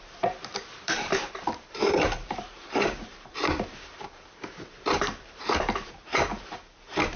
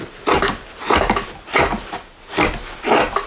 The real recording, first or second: second